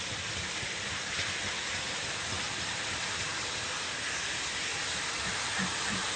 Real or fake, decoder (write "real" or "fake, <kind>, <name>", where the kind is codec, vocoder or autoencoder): real